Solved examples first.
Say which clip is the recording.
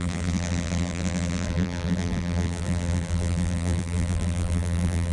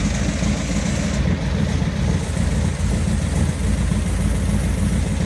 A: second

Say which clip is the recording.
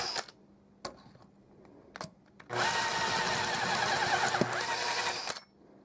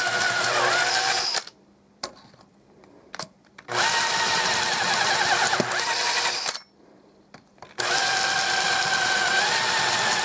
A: first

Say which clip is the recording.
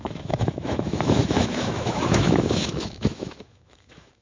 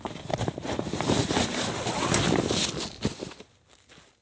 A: second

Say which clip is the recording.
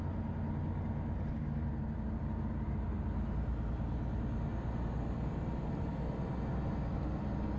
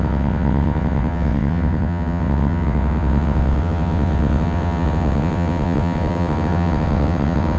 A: first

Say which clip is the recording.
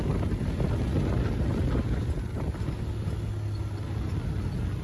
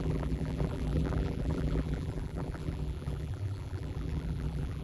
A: first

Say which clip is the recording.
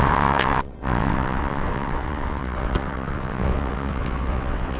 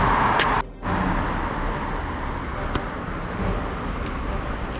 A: second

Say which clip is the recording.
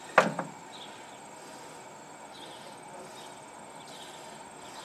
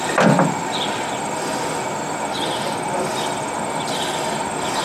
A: first